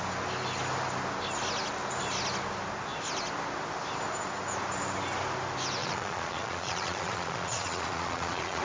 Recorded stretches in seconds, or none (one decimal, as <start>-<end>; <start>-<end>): 0.0-5.8